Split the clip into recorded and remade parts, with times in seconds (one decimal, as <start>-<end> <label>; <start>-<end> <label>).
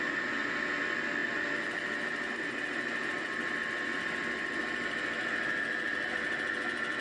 0.0-7.0 recorded